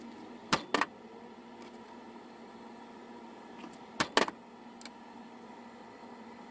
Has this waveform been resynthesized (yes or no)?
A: no